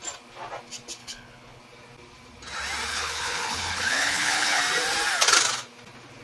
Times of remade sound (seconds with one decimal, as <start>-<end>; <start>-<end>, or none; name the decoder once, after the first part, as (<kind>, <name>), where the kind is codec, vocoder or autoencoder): 1.0-1.6 (codec, HILCodec); 2.9-4.6